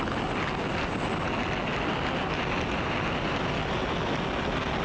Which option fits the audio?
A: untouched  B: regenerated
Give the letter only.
A